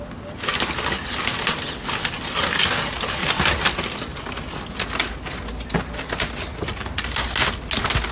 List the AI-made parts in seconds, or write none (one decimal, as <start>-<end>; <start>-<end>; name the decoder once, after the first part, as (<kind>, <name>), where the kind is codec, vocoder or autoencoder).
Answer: none